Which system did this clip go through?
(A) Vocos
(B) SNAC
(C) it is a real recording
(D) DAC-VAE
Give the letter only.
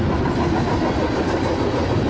C